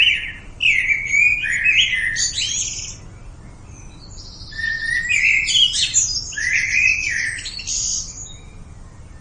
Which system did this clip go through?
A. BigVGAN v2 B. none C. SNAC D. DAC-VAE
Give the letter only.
B